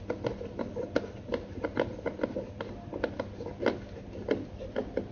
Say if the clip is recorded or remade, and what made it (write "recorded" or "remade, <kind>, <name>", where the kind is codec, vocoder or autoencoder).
recorded